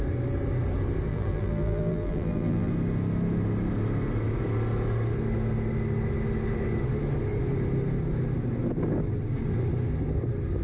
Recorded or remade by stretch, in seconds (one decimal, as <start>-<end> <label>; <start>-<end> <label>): 0.0-1.1 recorded; 1.1-2.7 remade; 2.7-10.6 recorded